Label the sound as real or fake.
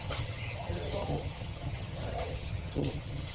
fake